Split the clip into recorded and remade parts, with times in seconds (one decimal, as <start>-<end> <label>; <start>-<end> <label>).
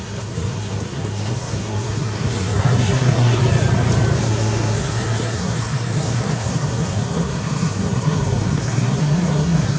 0.0-3.4 remade; 3.4-4.2 recorded; 4.2-9.8 remade